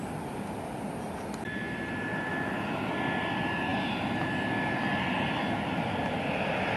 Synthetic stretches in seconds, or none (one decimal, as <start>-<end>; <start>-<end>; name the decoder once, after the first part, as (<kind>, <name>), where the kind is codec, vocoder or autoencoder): 2.3-2.9 (autoencoder, DAC-VAE)